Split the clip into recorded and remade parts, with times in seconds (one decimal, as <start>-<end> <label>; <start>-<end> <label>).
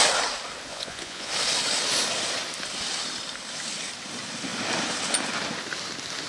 0.0-0.7 recorded; 0.7-1.3 remade; 1.3-6.3 recorded